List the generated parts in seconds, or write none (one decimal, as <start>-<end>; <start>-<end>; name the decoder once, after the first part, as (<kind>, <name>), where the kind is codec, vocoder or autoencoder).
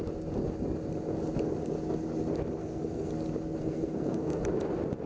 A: 2.6-3.1 (codec, SNAC); 3.6-4.4